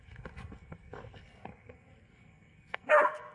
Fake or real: fake